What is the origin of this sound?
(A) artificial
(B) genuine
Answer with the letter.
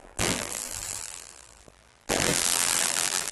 A